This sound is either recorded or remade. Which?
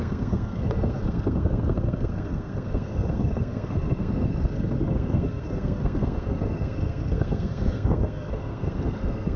remade